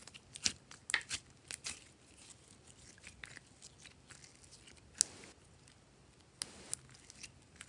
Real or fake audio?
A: real